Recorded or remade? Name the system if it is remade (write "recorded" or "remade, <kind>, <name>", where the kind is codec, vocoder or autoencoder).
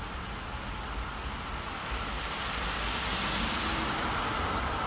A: recorded